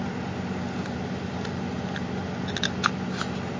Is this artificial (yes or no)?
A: no